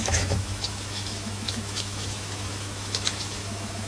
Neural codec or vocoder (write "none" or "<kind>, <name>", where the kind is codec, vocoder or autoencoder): autoencoder, DAC-VAE